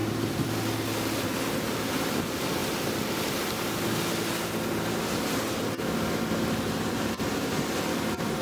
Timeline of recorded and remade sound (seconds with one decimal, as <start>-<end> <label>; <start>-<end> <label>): 0.0-1.2 recorded; 1.2-2.6 remade; 2.6-6.9 recorded; 6.9-8.4 remade